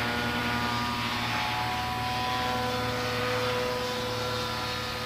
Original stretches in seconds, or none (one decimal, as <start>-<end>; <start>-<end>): 0.0-5.1